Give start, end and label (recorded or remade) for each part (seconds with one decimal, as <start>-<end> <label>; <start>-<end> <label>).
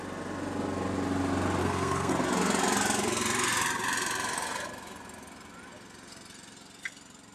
0.0-1.6 recorded; 1.6-2.1 remade; 2.1-7.3 recorded